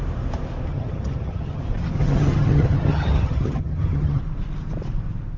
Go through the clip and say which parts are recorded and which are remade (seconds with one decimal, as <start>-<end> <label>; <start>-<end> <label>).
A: 0.0-0.7 recorded; 0.7-1.6 remade; 1.6-2.0 recorded; 2.0-4.2 remade; 4.2-5.4 recorded